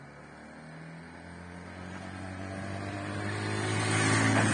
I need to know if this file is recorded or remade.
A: recorded